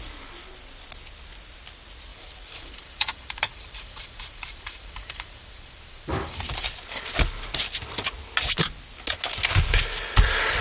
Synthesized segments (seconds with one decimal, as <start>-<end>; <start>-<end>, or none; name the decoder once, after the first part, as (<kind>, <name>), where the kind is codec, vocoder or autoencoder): 2.1-6.4 (vocoder, BigVGAN v2)